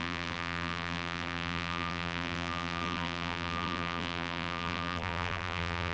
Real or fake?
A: fake